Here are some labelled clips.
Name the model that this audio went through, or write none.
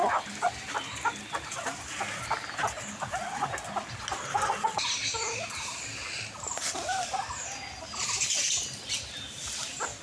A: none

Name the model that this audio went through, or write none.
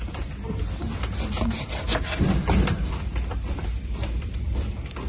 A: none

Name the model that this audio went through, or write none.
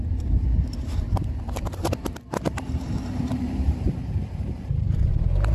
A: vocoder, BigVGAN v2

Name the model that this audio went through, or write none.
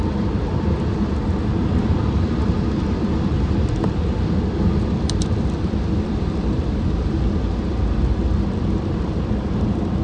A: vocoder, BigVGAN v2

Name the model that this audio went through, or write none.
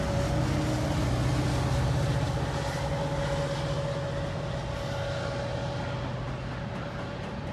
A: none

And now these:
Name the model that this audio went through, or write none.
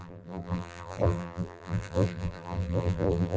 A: vocoder, BigVGAN v2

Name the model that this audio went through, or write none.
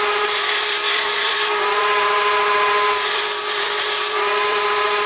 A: vocoder, BigVGAN v2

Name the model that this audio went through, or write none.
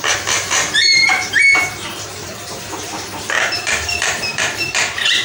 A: vocoder, BigVGAN v2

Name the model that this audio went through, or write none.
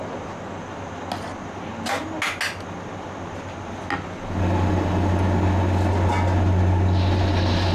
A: none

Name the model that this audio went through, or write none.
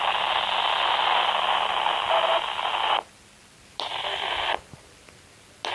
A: vocoder, BigVGAN v2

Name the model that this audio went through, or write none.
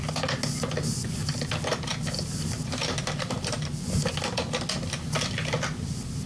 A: none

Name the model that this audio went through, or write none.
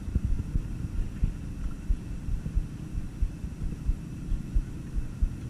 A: none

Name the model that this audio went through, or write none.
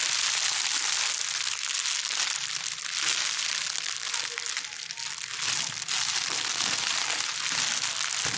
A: none